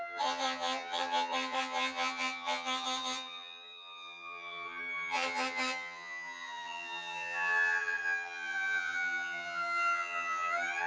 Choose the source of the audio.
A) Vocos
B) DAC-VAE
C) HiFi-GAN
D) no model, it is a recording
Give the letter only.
C